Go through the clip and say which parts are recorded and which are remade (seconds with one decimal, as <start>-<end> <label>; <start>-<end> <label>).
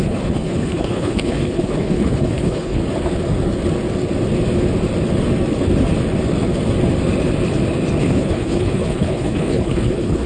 0.0-2.8 remade; 2.8-8.0 recorded; 8.0-10.3 remade